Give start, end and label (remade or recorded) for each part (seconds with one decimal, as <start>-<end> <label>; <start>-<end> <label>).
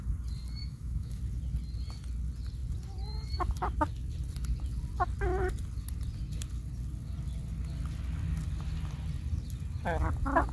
0.0-0.6 recorded; 0.6-1.2 remade; 1.2-10.5 recorded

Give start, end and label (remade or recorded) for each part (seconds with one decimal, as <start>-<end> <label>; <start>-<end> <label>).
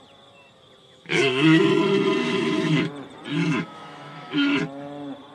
0.0-0.8 recorded; 0.8-1.7 remade; 1.7-2.2 recorded; 2.2-2.9 remade; 2.9-3.3 recorded; 3.3-4.6 remade; 4.6-5.3 recorded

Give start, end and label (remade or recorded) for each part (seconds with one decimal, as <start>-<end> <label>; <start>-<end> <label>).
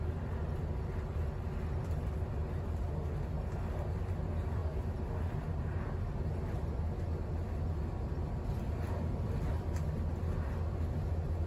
0.0-11.5 recorded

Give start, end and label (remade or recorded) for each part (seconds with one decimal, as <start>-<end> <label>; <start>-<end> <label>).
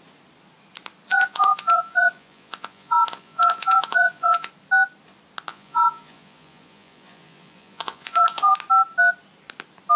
0.0-1.1 recorded; 1.1-4.5 remade; 4.5-5.5 recorded; 5.5-8.5 remade; 8.5-10.0 recorded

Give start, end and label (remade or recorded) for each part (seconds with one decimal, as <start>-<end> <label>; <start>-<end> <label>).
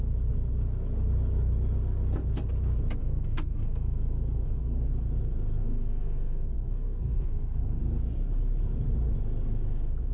0.0-3.0 recorded; 3.0-4.9 remade; 4.9-5.6 recorded; 5.6-7.8 remade; 7.8-10.1 recorded